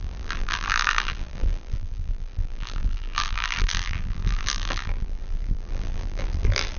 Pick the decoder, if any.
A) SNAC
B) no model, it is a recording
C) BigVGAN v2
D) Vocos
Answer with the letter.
C